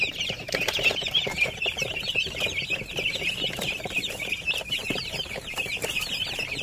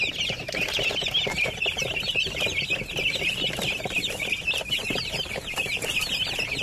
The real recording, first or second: second